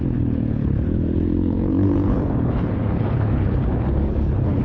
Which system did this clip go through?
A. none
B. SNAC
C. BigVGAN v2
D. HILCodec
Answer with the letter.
D